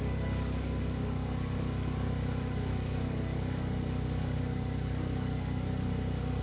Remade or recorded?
remade